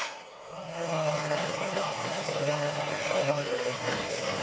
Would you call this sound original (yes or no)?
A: no